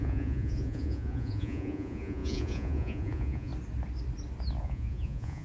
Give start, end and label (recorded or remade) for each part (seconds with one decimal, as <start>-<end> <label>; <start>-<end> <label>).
0.0-3.5 remade; 3.5-4.6 recorded; 4.6-5.4 remade